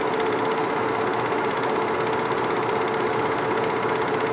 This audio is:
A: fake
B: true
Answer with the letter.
B